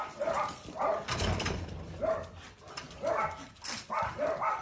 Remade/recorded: remade